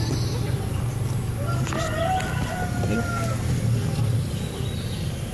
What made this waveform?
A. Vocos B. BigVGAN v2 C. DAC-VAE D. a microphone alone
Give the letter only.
D